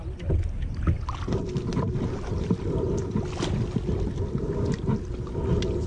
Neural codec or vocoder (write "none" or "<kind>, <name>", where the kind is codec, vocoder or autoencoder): none